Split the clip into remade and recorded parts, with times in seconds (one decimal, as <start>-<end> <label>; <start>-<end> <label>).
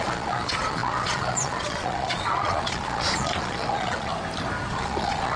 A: 0.0-4.1 remade; 4.1-4.7 recorded; 4.7-5.4 remade